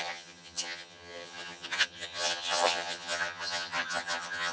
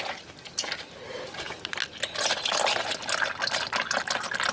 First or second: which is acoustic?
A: second